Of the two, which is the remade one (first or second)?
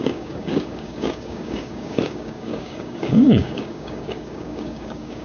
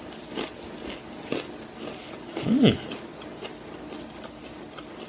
first